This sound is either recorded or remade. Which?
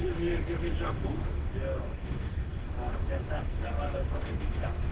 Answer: remade